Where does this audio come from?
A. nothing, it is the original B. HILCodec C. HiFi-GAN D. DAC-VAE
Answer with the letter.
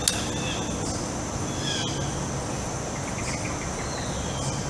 A